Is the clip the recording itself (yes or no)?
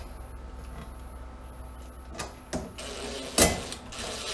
yes